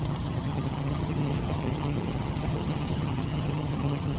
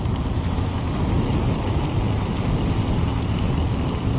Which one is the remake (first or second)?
first